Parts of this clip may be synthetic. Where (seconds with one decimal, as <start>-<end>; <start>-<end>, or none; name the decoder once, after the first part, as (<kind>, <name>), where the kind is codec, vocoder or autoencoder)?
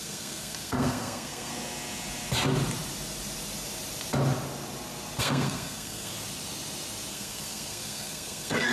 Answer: 0.0-1.5 (codec, SNAC); 5.2-6.1; 7.1-8.7